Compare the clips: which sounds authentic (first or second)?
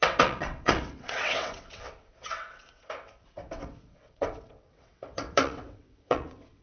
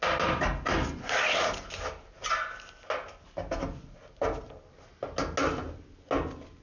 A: second